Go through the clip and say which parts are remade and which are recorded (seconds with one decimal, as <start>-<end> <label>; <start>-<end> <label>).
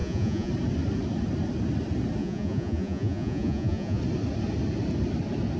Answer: 0.0-0.5 remade; 0.5-2.2 recorded; 2.2-4.0 remade; 4.0-5.6 recorded